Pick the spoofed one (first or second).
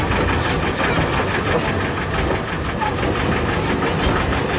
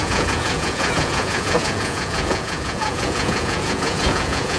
second